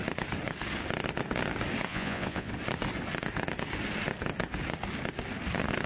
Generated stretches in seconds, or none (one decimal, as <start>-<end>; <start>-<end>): 1.9-2.5